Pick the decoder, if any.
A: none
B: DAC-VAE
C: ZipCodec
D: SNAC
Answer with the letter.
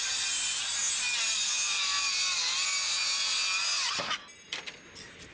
A